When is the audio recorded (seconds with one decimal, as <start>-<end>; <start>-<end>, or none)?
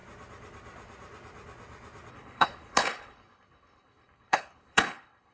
0.0-2.1